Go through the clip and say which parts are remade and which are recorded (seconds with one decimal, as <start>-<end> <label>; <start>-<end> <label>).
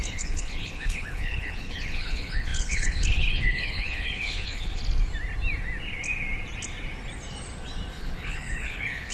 0.0-4.8 remade; 4.8-7.9 recorded; 7.9-9.1 remade